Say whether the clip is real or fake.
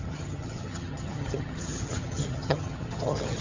fake